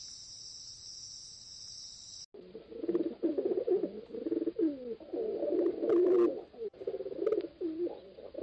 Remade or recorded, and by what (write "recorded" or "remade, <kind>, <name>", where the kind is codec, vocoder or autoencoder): recorded